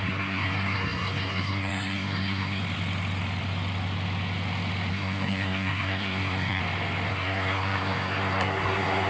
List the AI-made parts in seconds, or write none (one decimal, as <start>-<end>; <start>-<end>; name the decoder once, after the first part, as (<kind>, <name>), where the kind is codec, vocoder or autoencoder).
0.0-2.6 (codec, SNAC); 4.9-6.6; 7.1-9.1